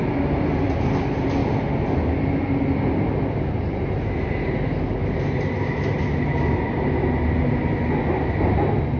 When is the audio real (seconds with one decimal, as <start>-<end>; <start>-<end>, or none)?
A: 0.0-9.0